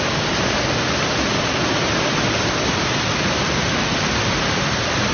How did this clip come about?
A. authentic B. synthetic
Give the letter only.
A